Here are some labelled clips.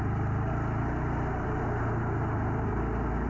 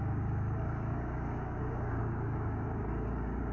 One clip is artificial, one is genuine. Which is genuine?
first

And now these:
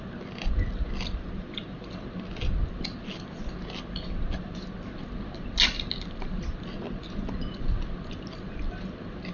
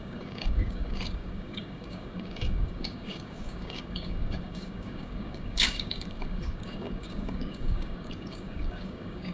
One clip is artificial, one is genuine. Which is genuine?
first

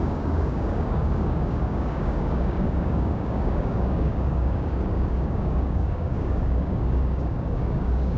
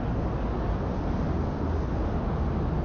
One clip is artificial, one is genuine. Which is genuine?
second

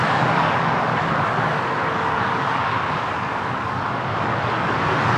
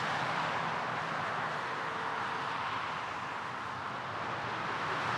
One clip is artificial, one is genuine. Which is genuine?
second